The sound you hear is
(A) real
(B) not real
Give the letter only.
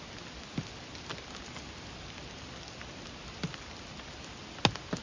A